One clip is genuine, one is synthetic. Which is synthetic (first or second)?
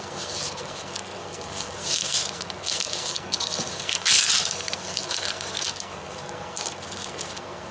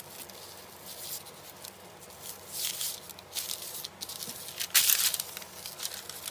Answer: first